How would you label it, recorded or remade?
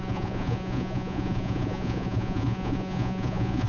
remade